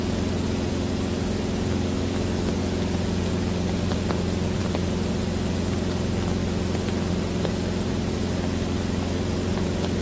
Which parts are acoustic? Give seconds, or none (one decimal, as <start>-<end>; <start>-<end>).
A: 0.0-2.6; 3.3-10.0